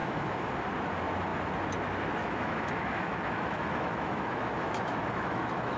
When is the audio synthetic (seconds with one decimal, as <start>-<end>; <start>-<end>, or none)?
0.0-0.5; 2.2-5.8